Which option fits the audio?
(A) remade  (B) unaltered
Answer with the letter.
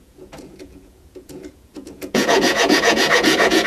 A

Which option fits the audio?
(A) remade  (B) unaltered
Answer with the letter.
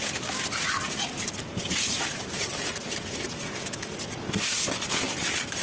B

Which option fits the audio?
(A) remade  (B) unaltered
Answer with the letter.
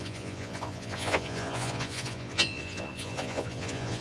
A